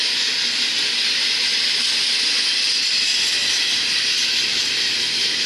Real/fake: real